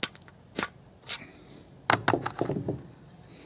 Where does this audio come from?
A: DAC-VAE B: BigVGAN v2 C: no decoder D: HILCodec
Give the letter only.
C